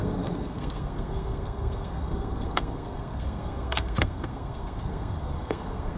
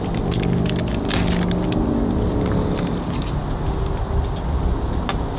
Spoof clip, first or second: first